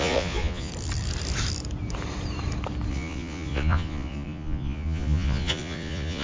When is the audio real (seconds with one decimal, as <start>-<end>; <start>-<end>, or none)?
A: 0.7-2.9